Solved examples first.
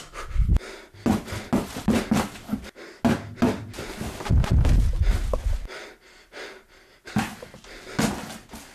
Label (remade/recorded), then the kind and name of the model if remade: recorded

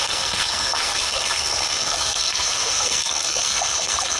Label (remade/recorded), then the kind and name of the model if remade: remade, codec, SNAC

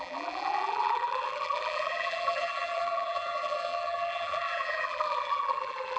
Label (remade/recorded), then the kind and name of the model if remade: remade, vocoder, BigVGAN v2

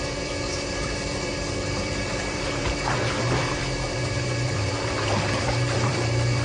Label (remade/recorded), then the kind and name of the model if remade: remade, vocoder, BigVGAN v2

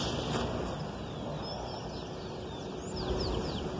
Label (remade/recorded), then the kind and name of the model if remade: recorded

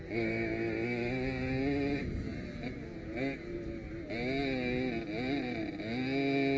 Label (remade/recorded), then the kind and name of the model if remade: recorded